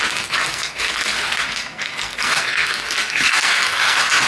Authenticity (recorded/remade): remade